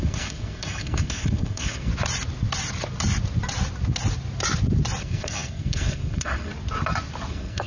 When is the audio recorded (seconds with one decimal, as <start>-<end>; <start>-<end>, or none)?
1.9-5.0; 6.5-7.3